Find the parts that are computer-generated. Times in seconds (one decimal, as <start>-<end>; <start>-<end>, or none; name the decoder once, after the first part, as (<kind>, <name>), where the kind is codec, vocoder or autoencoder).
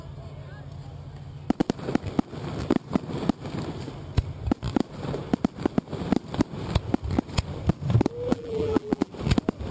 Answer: 8.3-9.1 (vocoder, BigVGAN v2)